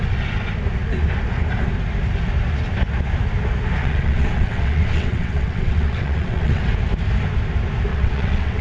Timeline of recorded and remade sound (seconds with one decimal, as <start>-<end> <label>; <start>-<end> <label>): 0.0-3.8 recorded; 3.8-6.6 remade; 6.6-7.9 recorded; 7.9-8.6 remade